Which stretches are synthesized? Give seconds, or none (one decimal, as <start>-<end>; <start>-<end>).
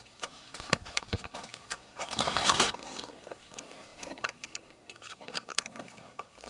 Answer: 0.0-6.5